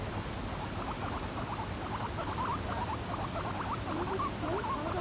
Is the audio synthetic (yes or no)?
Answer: no